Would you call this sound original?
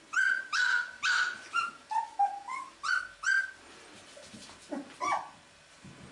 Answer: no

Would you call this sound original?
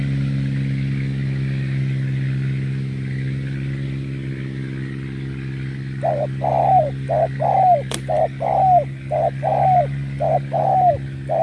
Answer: yes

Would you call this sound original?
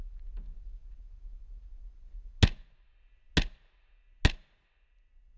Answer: yes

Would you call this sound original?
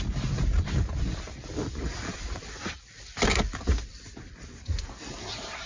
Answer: no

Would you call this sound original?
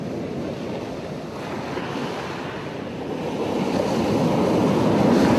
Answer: yes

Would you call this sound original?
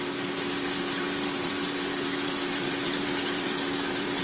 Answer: no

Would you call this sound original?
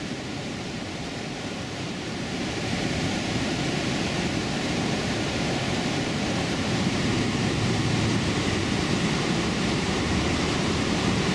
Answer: no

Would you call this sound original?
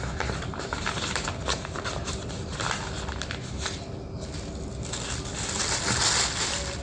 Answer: yes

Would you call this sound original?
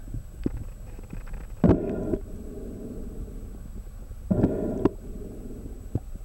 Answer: yes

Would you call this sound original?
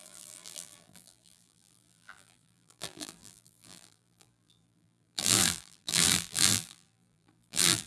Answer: no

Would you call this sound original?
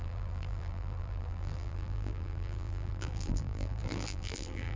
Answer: no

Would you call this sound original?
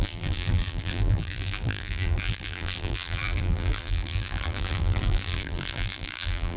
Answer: no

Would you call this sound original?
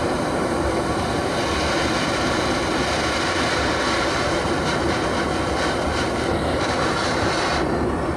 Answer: no